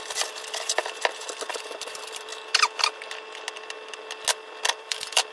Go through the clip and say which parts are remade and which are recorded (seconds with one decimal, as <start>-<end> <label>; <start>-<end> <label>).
0.0-0.8 remade; 0.8-1.5 recorded; 1.5-2.3 remade; 2.3-4.8 recorded; 4.8-5.3 remade